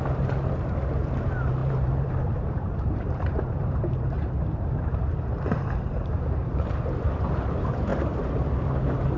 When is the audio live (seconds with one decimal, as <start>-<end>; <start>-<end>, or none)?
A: 7.9-9.2